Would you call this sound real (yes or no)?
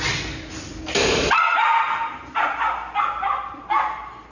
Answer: yes